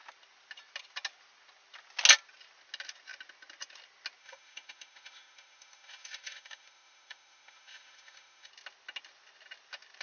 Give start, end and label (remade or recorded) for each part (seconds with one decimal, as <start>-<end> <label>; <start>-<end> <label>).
0.0-4.2 recorded; 4.2-8.5 remade; 8.5-10.0 recorded